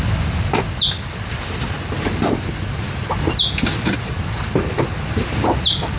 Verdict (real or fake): real